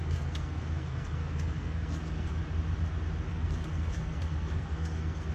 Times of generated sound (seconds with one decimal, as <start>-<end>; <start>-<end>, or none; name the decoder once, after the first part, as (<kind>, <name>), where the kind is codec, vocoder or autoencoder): 0.0-2.3 (codec, SNAC); 3.3-5.3